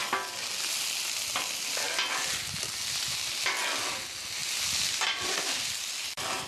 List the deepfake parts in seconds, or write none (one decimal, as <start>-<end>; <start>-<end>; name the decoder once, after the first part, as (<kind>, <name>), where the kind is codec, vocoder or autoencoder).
4.4-5.5 (vocoder, BigVGAN v2)